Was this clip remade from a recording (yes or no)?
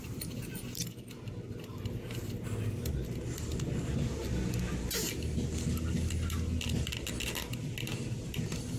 no